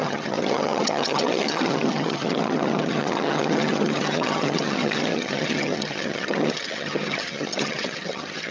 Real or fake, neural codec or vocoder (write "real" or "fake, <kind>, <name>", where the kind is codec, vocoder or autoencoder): fake, vocoder, HiFi-GAN